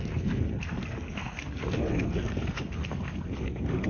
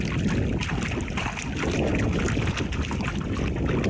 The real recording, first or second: second